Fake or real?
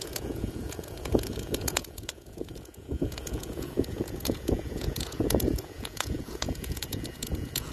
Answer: fake